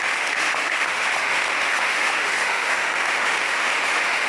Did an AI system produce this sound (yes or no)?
yes